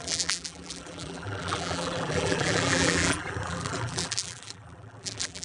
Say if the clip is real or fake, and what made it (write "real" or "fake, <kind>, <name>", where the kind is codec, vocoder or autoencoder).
fake, vocoder, BigVGAN v2